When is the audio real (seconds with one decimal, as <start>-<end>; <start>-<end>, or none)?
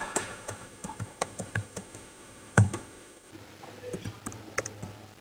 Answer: 3.3-5.2